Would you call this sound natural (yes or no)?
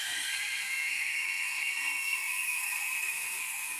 no